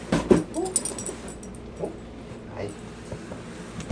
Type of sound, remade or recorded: recorded